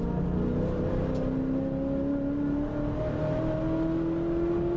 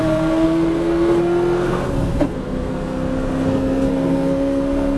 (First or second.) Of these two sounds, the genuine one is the first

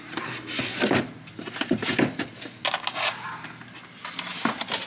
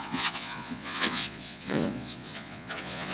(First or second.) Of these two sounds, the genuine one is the first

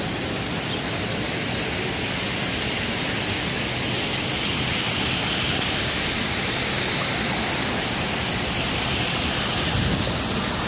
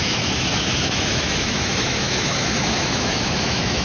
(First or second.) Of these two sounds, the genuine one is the first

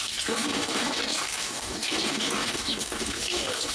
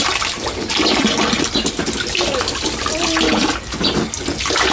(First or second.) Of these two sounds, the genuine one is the second